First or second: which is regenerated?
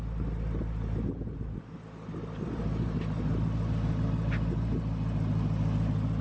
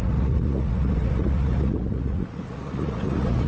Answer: second